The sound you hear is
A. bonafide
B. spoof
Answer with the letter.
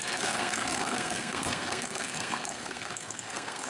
B